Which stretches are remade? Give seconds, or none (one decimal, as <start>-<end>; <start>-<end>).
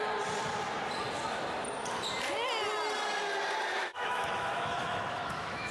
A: 3.8-5.7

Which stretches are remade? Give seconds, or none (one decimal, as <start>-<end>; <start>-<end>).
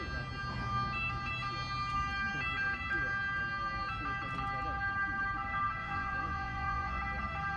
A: 5.8-7.0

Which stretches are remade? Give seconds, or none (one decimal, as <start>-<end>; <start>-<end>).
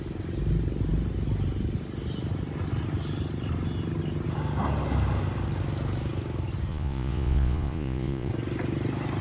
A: 6.7-8.3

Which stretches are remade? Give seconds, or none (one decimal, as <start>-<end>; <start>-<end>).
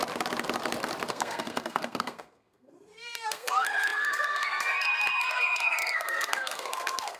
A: 1.1-7.2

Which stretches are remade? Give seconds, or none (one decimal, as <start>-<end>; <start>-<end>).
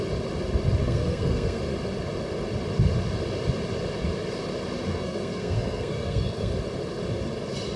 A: 0.8-1.6; 4.9-6.5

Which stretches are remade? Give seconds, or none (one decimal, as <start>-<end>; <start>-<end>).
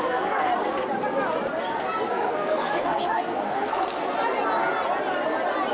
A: 0.0-0.5; 2.1-4.0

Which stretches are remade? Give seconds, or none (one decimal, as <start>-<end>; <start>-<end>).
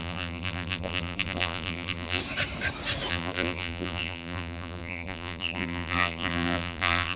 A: 0.0-2.2; 3.1-7.2